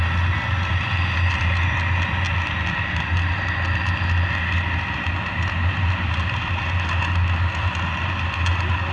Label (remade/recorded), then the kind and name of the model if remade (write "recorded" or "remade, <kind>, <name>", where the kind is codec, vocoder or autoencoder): recorded